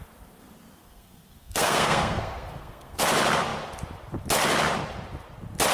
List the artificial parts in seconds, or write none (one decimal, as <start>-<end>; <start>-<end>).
0.8-3.0